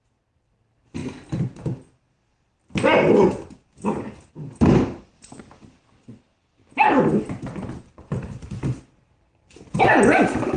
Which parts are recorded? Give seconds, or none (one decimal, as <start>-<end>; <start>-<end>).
0.0-10.6